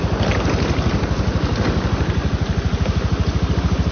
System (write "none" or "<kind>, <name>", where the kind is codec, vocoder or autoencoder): none